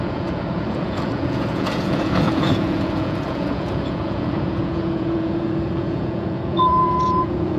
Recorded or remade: remade